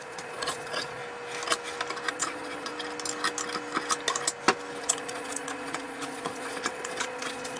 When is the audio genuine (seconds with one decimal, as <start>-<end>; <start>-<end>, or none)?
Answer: 1.0-2.1; 2.7-4.8